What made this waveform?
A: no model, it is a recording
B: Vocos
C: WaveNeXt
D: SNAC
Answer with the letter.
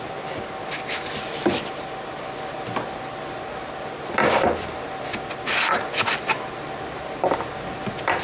A